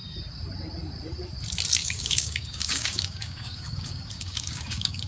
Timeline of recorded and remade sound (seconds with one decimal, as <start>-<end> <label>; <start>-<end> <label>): 0.0-1.8 recorded; 1.8-5.1 remade